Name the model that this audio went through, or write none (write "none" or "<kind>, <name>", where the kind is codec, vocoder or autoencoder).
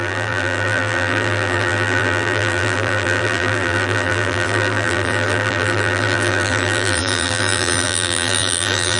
vocoder, BigVGAN v2